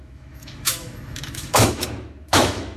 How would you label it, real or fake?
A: fake